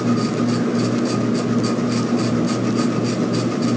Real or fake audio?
real